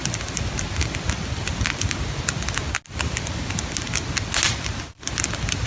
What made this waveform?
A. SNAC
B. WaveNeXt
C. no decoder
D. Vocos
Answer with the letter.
C